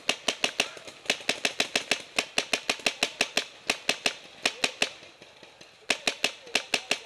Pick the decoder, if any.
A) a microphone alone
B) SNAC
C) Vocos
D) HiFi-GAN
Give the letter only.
A